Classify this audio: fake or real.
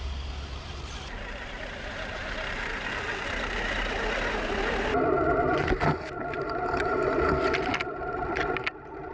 real